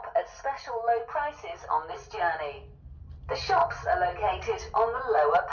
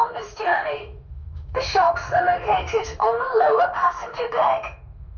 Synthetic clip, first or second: second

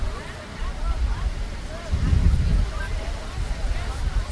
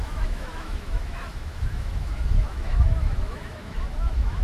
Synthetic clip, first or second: second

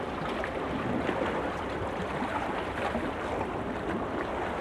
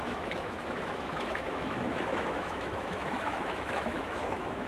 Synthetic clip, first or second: second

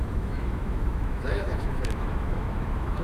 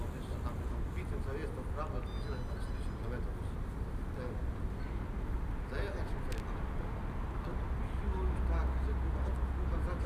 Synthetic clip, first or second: first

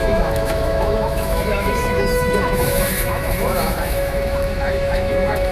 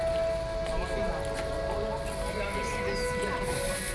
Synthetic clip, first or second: first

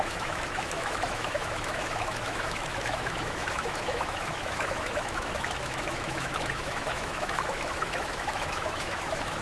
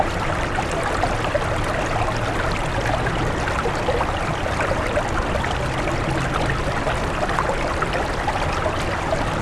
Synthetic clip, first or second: first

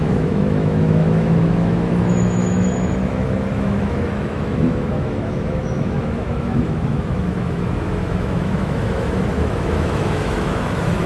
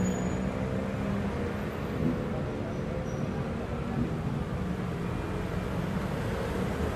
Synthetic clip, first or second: first